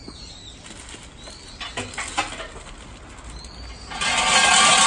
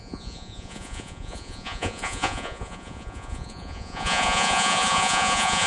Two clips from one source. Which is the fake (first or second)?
second